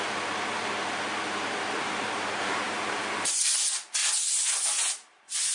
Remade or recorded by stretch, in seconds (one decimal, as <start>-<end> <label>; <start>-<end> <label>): 0.0-2.4 recorded; 2.4-3.4 remade; 3.4-5.5 recorded